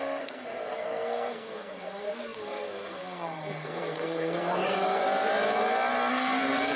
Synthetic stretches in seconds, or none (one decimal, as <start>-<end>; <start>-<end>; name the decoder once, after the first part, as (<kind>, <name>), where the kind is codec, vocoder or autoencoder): 0.0-5.0 (codec, SNAC); 6.1-6.8